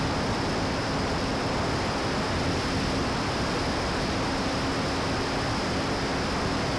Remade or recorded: recorded